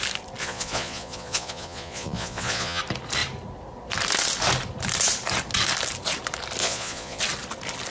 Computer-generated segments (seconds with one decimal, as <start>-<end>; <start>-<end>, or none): 0.4-2.8; 6.6-7.2